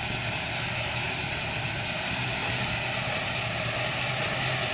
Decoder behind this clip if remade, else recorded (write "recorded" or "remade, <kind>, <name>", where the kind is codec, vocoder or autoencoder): recorded